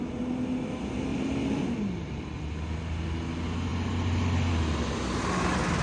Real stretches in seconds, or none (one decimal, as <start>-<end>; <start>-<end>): 0.0-1.1; 2.2-5.8